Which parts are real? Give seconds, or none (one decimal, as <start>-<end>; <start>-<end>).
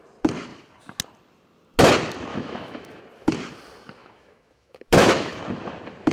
0.0-2.3; 3.0-4.0; 5.4-6.1